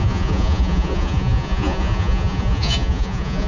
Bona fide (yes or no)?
no